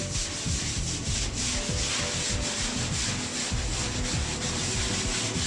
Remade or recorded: recorded